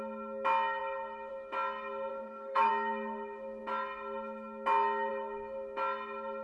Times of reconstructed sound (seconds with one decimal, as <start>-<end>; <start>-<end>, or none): 2.1-2.7